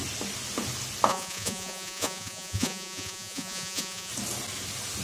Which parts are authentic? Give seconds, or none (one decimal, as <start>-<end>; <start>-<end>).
0.0-1.1; 4.1-5.0